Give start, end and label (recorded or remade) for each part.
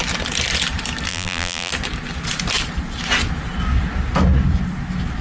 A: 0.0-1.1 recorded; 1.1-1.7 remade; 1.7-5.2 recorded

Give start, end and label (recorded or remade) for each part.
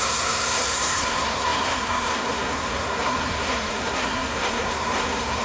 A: 0.0-5.4 remade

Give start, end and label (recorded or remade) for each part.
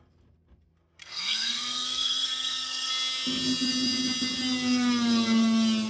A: 0.0-1.0 recorded; 1.0-2.9 remade; 2.9-5.9 recorded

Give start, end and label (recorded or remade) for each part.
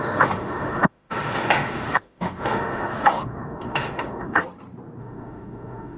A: 0.0-4.4 remade; 4.4-5.0 recorded; 5.0-6.0 remade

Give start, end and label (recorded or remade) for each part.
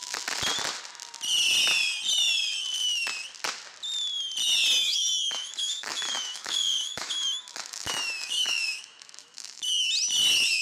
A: 0.0-4.8 recorded; 4.8-9.9 remade; 9.9-10.6 recorded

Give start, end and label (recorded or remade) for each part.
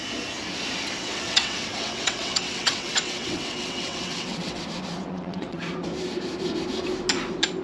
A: 0.0-1.0 recorded; 1.0-4.6 remade; 4.6-5.0 recorded; 5.0-5.6 remade; 5.6-7.6 recorded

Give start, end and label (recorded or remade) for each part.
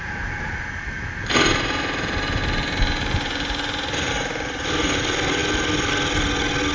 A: 0.0-2.4 recorded; 2.4-4.1 remade; 4.1-6.7 recorded